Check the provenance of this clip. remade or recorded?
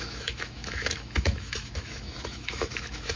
remade